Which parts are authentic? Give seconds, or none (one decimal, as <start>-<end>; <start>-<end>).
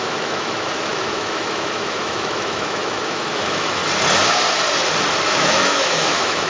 3.8-5.3